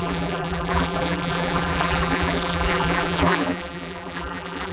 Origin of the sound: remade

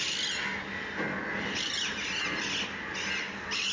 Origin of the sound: recorded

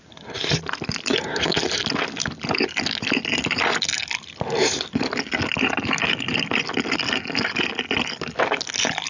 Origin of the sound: recorded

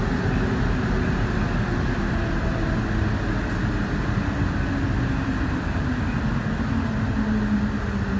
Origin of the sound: recorded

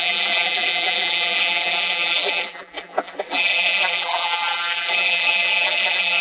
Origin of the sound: remade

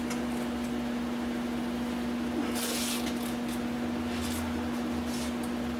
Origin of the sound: recorded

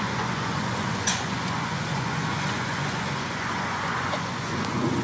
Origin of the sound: remade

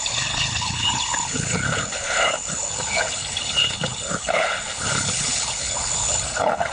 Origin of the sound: remade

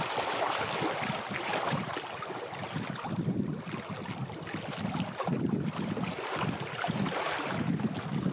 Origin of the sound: recorded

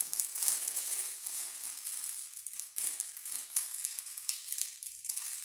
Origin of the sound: remade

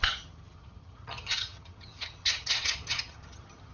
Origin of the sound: remade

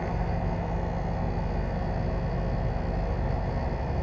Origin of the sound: recorded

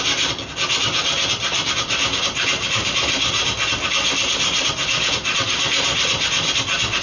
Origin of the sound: recorded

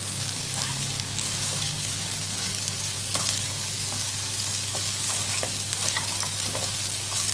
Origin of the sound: remade